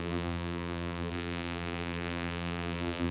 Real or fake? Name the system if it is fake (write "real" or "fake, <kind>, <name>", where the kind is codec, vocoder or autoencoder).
fake, vocoder, BigVGAN v2